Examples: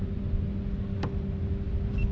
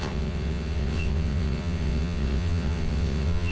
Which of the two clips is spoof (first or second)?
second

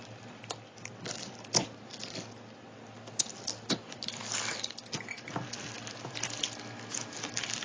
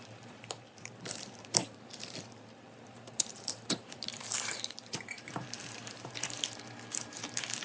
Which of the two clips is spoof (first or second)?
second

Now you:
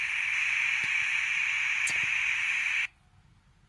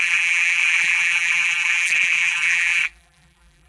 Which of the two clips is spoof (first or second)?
second